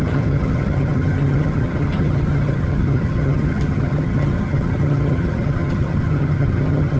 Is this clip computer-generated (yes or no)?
yes